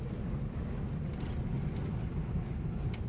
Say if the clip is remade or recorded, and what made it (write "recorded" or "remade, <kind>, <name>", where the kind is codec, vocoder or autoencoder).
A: recorded